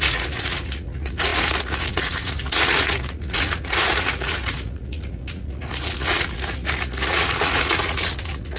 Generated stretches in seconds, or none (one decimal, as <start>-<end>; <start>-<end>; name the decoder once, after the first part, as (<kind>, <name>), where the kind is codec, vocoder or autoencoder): 0.0-8.6 (vocoder, Vocos)